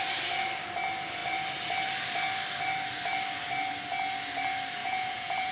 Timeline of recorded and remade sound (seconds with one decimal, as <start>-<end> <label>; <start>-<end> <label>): 0.0-4.8 recorded; 4.8-5.5 remade